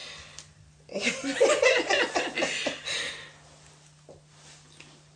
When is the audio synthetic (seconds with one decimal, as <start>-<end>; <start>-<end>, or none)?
none